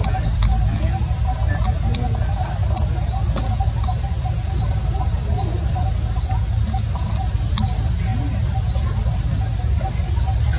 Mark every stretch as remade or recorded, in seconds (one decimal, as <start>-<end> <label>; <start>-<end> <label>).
0.0-10.6 recorded